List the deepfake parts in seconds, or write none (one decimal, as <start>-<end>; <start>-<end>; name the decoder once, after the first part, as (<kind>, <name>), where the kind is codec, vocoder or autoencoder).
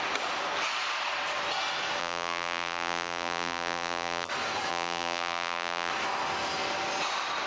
2.0-4.3 (vocoder, BigVGAN v2); 4.7-5.9